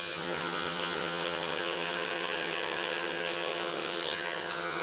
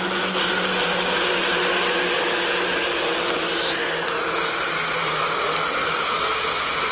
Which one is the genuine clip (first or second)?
second